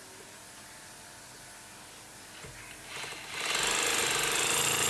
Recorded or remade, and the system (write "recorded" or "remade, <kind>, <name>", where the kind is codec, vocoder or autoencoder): recorded